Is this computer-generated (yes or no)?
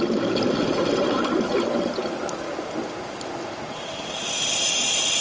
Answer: no